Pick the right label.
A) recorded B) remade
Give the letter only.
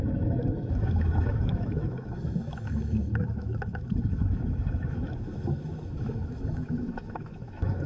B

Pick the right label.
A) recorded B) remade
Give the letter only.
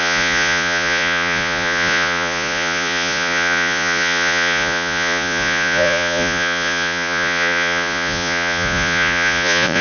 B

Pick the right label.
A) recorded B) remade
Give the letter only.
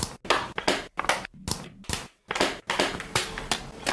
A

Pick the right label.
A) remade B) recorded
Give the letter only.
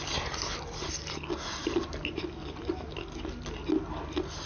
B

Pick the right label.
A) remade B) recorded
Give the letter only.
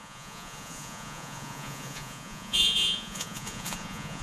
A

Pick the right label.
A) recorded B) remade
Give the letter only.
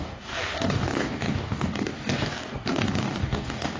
B